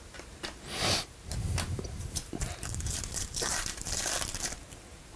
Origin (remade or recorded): remade